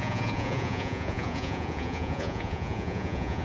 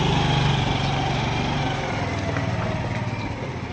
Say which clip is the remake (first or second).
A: first